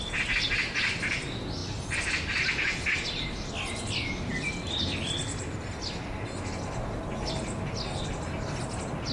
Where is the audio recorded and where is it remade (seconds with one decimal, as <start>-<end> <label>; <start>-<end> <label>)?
0.0-9.1 recorded